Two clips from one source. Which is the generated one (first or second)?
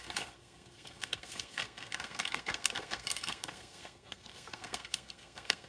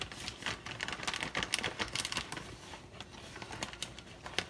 first